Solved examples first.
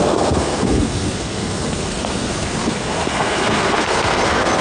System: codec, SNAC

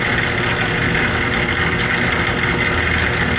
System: none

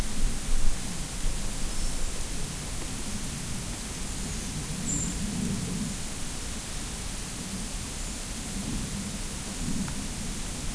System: none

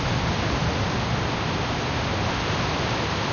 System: none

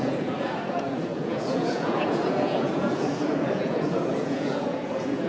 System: vocoder, Vocos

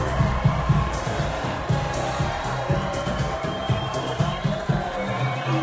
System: vocoder, BigVGAN v2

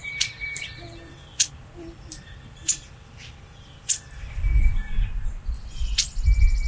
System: vocoder, BigVGAN v2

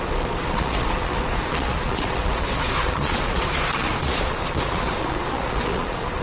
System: vocoder, Vocos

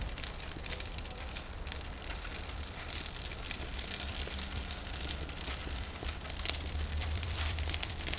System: vocoder, BigVGAN v2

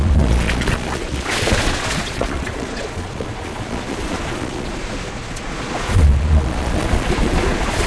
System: vocoder, Vocos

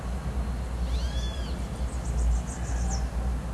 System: none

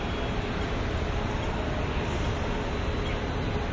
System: none